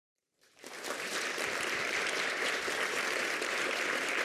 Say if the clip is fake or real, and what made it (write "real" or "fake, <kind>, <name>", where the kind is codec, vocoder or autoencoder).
fake, vocoder, BigVGAN v2